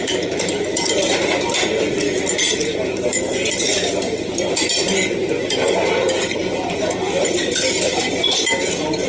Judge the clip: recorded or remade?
remade